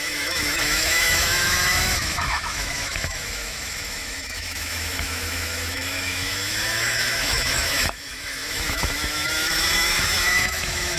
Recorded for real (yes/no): no